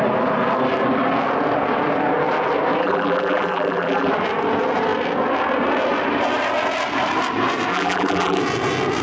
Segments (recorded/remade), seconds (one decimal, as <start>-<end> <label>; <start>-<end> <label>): 0.0-2.8 recorded; 2.8-4.1 remade; 4.1-7.7 recorded; 7.7-8.4 remade; 8.4-9.0 recorded